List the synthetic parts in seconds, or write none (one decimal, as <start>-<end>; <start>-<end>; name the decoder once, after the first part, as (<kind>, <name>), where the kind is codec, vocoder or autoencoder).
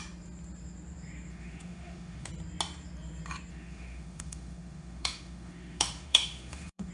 1.3-2.3 (autoencoder, DAC-VAE); 3.5-6.9